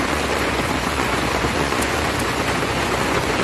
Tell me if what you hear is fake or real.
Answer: fake